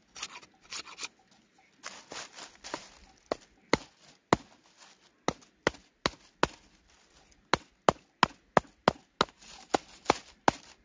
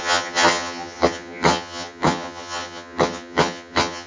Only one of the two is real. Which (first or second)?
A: first